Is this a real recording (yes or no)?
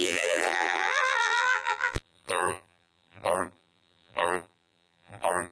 no